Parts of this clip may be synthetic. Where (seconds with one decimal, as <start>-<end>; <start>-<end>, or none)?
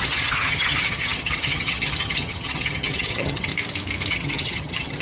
0.0-3.5; 4.1-5.0